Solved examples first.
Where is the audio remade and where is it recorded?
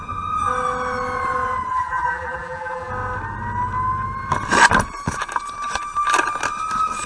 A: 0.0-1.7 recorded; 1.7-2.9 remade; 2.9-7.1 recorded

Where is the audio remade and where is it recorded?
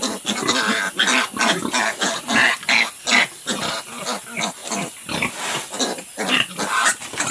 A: 0.0-7.3 recorded